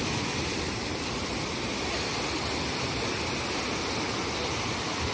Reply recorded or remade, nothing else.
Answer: recorded